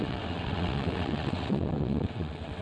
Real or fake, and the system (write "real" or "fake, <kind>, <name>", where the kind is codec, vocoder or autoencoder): fake, vocoder, WaveNeXt